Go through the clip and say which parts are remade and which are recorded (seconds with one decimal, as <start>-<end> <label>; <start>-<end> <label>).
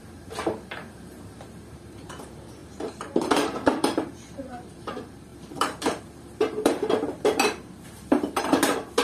0.0-9.0 remade